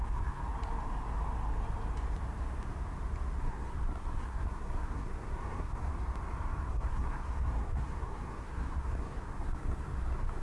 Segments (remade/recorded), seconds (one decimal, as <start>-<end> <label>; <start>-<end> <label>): 0.0-0.4 remade; 0.4-3.4 recorded; 3.4-5.9 remade; 5.9-6.7 recorded; 6.7-10.4 remade

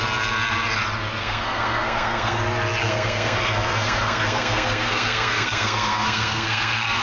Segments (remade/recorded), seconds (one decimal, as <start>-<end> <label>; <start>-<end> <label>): 0.0-1.2 recorded; 1.2-2.4 remade; 2.4-2.8 recorded; 2.8-7.0 remade

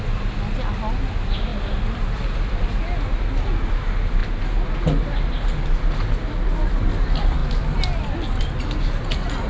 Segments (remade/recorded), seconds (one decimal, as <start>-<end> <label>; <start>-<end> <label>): 0.0-9.5 recorded

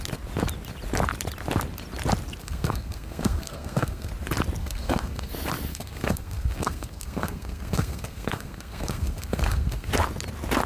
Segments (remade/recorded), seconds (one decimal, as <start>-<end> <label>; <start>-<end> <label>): 0.0-2.4 recorded; 2.4-4.1 remade; 4.1-4.6 recorded; 4.6-5.3 remade; 5.3-5.7 recorded; 5.7-9.9 remade; 9.9-10.7 recorded